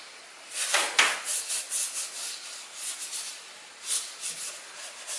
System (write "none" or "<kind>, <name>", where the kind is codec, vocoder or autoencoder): none